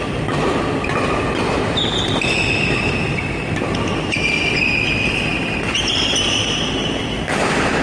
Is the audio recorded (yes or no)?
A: yes